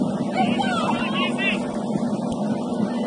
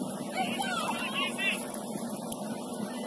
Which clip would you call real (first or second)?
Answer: first